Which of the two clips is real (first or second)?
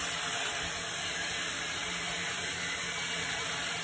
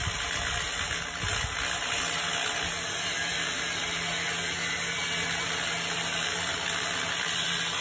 second